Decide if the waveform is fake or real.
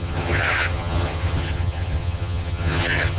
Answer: fake